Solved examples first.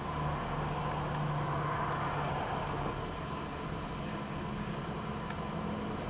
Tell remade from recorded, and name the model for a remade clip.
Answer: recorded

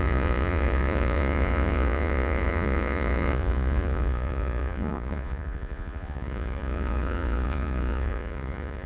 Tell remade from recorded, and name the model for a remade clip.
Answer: remade, vocoder, Vocos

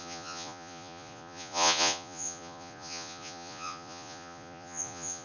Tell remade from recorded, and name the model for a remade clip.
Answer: remade, vocoder, Vocos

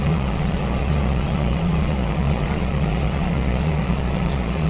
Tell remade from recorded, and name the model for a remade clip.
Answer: remade, vocoder, Vocos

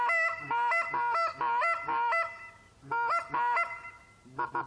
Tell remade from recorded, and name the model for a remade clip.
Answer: recorded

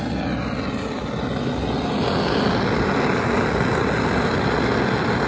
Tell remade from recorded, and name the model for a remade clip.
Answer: recorded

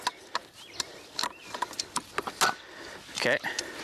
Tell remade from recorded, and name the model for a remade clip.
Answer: recorded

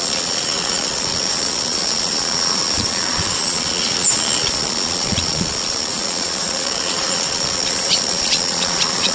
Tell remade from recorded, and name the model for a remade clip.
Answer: remade, vocoder, Vocos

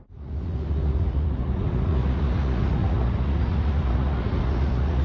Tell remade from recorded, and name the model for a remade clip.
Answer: remade, vocoder, Vocos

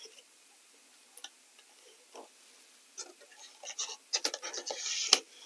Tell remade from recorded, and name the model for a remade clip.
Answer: recorded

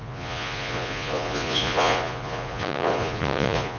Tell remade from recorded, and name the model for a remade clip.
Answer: remade, vocoder, Vocos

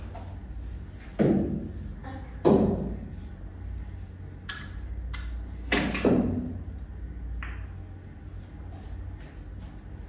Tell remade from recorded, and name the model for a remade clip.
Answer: recorded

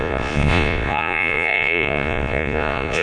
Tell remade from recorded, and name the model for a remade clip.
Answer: remade, vocoder, Vocos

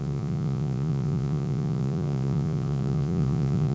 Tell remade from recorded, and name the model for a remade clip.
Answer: remade, vocoder, Vocos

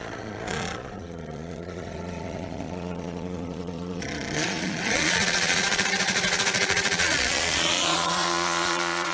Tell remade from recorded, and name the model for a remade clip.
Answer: remade, vocoder, Vocos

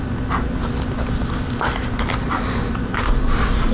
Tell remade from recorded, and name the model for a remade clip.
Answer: recorded